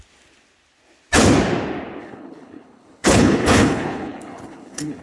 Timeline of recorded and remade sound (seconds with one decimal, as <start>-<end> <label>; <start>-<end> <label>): 0.0-2.0 recorded; 2.0-5.0 remade